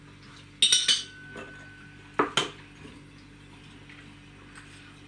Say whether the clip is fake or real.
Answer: real